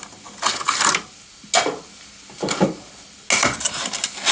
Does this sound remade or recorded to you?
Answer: recorded